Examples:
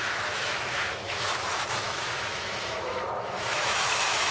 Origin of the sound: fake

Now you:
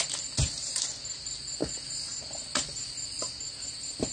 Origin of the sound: real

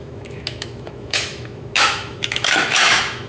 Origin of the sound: fake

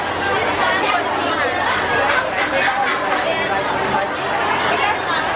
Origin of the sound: real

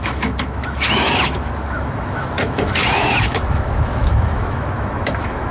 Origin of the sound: fake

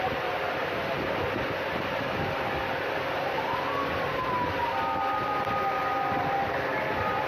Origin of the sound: real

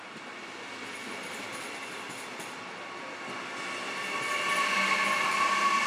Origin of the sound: real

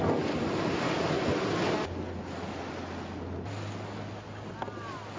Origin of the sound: real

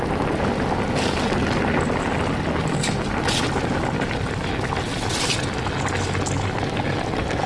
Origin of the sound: real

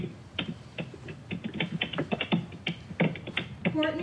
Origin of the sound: real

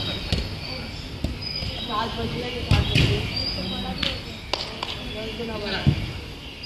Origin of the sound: real